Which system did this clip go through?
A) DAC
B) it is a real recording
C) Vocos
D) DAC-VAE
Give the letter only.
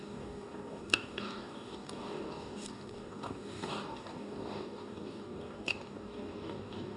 A